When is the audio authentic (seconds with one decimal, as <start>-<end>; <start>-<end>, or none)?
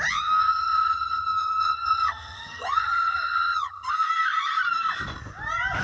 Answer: 0.0-0.4; 3.9-5.8